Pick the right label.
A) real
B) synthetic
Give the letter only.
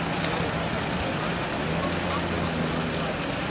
A